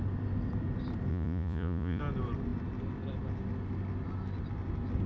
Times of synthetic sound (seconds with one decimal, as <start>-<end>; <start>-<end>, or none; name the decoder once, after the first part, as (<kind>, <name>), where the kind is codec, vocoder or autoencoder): 1.1-2.0 (vocoder, Vocos)